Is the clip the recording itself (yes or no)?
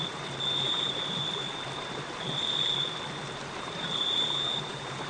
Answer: no